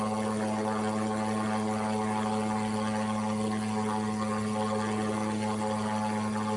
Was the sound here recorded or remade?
recorded